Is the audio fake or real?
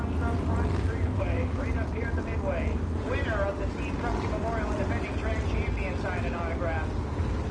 real